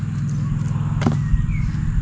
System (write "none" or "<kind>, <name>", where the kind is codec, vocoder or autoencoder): none